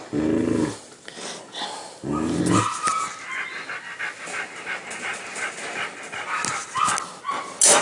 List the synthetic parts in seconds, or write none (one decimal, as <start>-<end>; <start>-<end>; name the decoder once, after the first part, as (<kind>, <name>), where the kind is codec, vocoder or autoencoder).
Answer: none